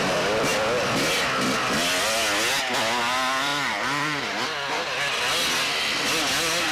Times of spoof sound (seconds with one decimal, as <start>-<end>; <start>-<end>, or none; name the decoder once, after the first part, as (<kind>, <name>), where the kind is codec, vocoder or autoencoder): 0.0-0.5 (vocoder, BigVGAN v2); 2.5-6.7